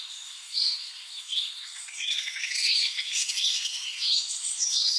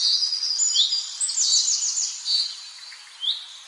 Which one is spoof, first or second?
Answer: first